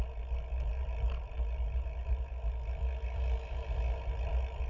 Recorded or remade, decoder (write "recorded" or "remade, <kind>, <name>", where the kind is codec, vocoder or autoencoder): recorded